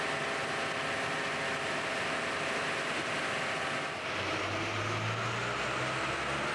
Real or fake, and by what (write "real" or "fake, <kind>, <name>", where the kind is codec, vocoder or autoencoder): real